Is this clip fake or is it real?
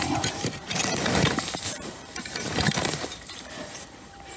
fake